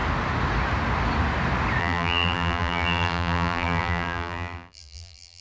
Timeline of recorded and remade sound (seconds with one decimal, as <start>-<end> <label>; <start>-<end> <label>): 0.0-1.8 recorded; 1.8-5.4 remade